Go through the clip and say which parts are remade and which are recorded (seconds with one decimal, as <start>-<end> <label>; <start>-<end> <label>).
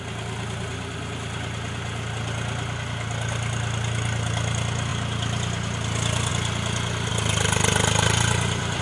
0.0-7.1 recorded; 7.1-8.8 remade